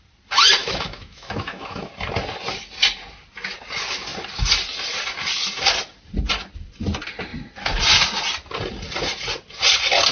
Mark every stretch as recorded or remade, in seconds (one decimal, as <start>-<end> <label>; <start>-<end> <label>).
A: 0.0-0.6 recorded; 0.6-1.9 remade; 1.9-10.1 recorded